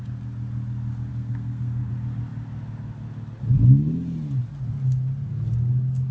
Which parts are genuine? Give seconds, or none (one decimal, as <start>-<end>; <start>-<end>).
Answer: 0.0-1.1; 1.9-6.1

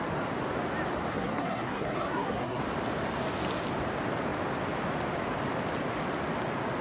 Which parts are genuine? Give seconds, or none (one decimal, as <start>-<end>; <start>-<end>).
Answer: 0.0-1.1; 2.6-6.8

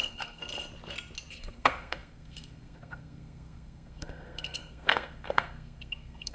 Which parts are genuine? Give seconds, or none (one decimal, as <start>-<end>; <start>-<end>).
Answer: 0.4-1.3

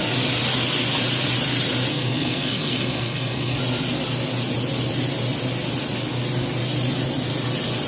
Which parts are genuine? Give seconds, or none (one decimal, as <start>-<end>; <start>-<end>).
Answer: 0.0-1.9; 3.6-7.9

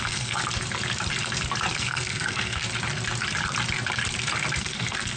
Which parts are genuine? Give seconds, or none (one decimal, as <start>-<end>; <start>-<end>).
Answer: 0.4-1.7; 2.6-4.6

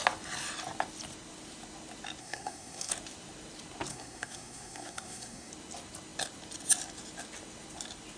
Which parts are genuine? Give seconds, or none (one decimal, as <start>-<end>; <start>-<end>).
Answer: 0.0-2.2; 2.9-3.9; 5.5-8.2